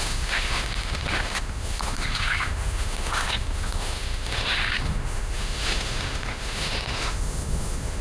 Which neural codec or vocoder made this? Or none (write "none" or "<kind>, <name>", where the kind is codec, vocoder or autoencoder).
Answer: autoencoder, DAC-VAE